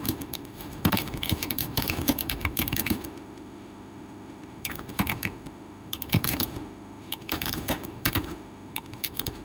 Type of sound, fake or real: fake